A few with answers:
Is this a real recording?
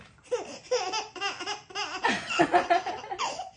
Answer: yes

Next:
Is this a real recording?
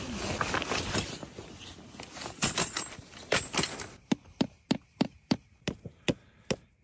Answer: yes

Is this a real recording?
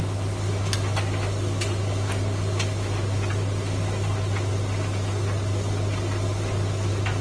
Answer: yes